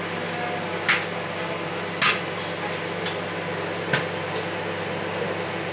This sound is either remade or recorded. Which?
recorded